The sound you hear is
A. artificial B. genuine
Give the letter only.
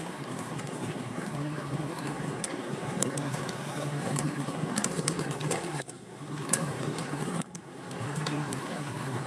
A